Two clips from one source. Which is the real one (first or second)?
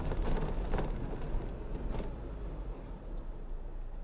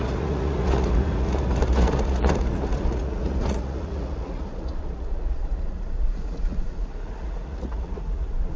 first